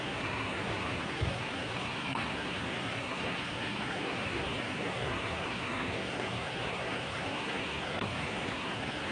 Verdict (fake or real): fake